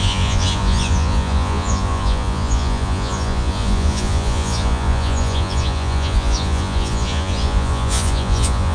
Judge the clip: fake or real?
fake